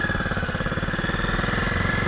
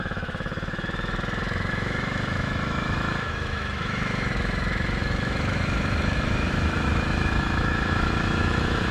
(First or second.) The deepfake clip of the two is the second